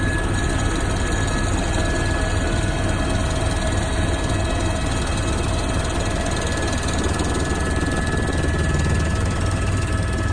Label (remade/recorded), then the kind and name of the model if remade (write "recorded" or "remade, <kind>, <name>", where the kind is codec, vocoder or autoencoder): recorded